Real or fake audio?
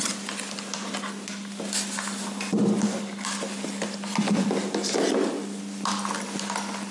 real